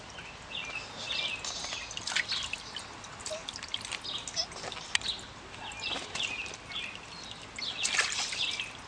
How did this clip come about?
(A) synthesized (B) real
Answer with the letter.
B